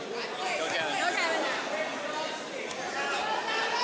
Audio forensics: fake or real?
real